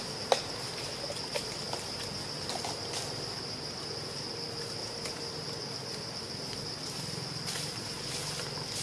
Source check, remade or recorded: recorded